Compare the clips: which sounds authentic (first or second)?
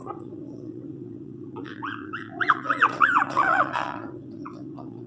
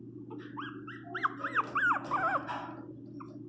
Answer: second